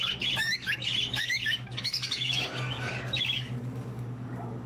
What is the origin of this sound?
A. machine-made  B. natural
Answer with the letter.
A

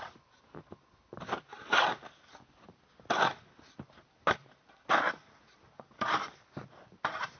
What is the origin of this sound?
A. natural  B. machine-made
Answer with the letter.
A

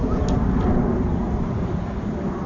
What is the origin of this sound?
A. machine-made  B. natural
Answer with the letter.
B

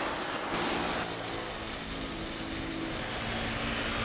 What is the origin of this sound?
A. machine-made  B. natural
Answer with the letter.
B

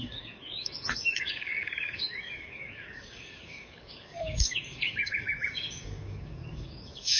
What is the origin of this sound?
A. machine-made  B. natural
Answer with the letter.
A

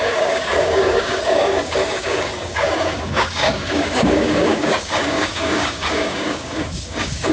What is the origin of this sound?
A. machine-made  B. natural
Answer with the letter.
A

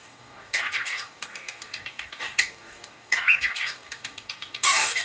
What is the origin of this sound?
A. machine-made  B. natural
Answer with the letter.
A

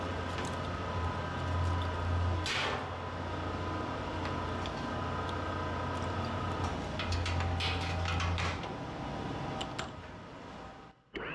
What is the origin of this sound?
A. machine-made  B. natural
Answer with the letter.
B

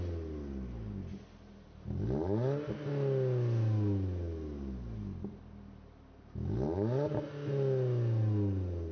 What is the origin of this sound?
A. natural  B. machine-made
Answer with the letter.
A